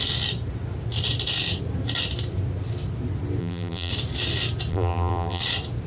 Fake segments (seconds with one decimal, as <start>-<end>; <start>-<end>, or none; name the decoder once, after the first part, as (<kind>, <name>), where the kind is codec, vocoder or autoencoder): 3.4-3.9 (vocoder, BigVGAN v2); 4.7-5.4